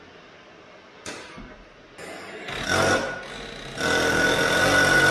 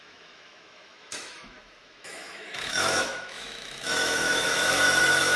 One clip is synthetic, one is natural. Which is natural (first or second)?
first